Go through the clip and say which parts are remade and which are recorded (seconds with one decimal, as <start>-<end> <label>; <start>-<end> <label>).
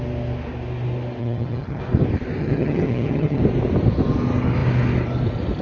0.0-1.2 recorded; 1.2-1.8 remade; 1.8-2.4 recorded; 2.4-3.4 remade; 3.4-5.6 recorded